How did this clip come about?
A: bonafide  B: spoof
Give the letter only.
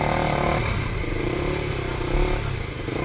A